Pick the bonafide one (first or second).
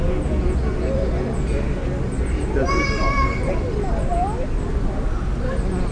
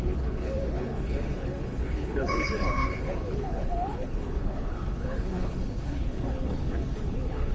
first